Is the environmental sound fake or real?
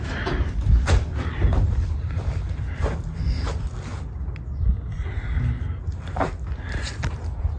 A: real